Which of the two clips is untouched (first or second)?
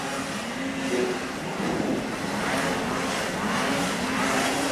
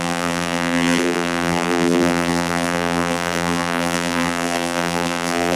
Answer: first